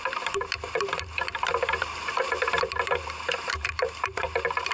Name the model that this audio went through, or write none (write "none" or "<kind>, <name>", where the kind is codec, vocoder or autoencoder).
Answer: vocoder, BigVGAN v2